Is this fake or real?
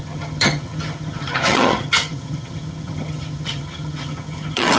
fake